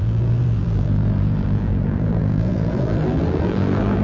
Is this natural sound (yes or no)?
no